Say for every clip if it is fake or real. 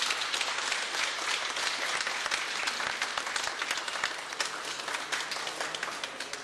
real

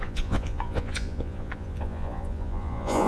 fake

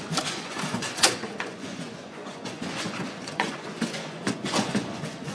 fake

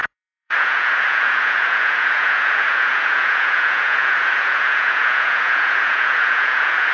fake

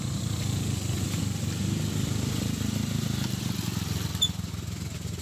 real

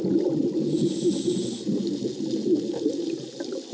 real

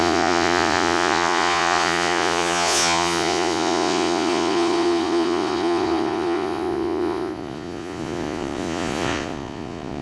fake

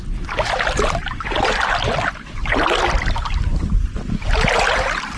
real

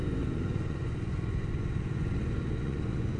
fake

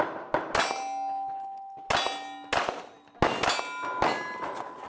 real